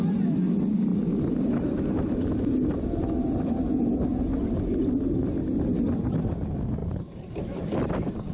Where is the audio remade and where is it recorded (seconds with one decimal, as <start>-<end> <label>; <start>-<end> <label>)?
0.0-6.8 recorded; 6.8-7.8 remade; 7.8-8.3 recorded

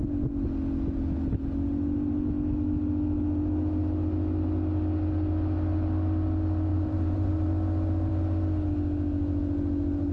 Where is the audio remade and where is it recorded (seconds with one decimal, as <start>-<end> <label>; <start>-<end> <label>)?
0.0-6.7 recorded; 6.7-7.5 remade; 7.5-10.1 recorded